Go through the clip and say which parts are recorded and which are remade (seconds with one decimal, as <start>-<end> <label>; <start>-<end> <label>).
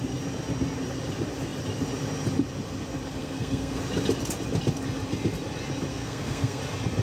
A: 0.0-3.2 recorded; 3.2-3.8 remade; 3.8-5.9 recorded; 5.9-6.6 remade; 6.6-7.0 recorded